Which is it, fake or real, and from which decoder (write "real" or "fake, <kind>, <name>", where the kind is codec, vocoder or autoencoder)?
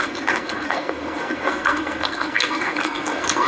fake, codec, SNAC